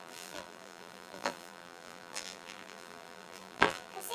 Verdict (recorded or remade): remade